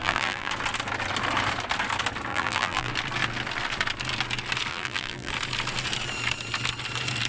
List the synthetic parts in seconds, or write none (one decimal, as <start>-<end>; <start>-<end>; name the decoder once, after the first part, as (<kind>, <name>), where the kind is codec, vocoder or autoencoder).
0.0-0.5 (vocoder, BigVGAN v2); 2.3-2.9; 4.7-5.3